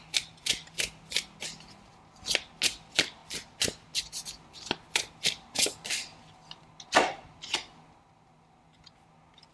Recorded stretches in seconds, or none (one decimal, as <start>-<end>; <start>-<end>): 0.0-9.5